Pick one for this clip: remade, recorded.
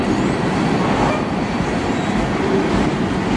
recorded